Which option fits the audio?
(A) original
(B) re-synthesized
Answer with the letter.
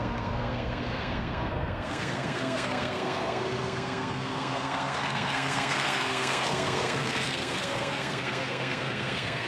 B